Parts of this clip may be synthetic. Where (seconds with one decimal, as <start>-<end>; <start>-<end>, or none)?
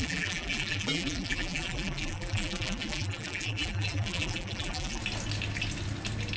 0.0-5.0